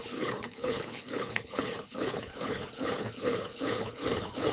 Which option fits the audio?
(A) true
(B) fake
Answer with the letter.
B